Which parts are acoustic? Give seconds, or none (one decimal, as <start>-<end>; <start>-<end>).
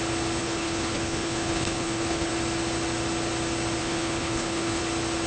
0.0-0.4; 2.3-3.8; 4.8-5.3